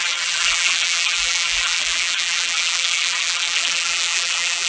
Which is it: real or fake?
fake